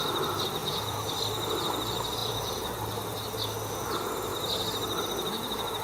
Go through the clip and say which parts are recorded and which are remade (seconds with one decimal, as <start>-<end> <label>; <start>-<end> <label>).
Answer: 0.0-0.6 recorded; 0.6-1.1 remade; 1.1-2.2 recorded; 2.2-2.8 remade; 2.8-5.8 recorded